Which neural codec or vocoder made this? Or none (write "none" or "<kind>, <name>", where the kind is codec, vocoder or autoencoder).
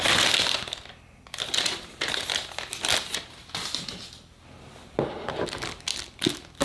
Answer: none